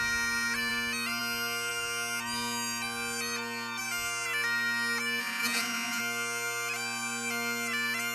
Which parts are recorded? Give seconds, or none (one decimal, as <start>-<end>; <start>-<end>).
0.0-5.2; 6.0-8.1